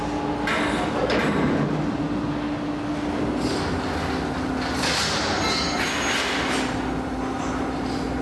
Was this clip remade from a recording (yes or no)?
no